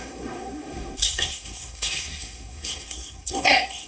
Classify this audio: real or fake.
fake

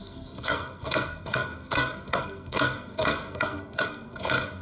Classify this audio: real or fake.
fake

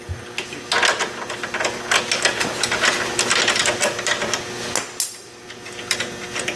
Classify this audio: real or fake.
real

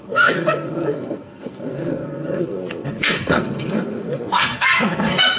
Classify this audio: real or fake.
fake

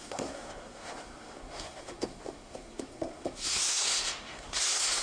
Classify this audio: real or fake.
fake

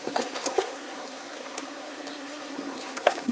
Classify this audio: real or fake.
fake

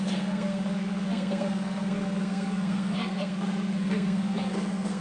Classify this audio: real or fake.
fake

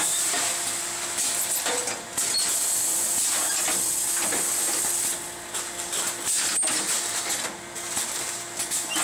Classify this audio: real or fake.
real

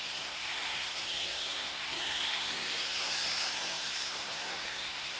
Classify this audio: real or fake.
fake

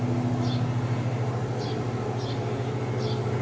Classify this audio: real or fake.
real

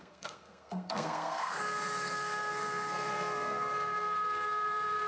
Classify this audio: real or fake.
fake